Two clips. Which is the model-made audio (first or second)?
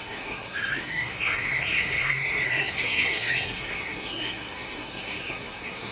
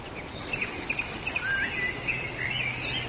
first